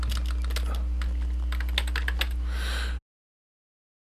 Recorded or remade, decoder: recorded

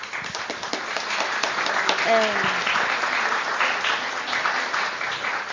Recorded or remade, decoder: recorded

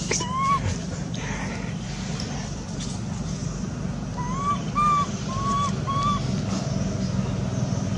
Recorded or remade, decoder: recorded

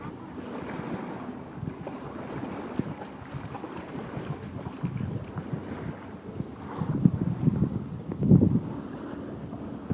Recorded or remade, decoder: recorded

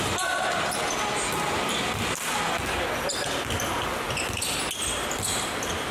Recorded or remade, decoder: recorded